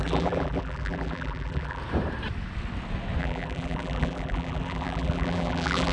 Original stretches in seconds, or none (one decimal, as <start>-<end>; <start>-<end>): 1.8-3.2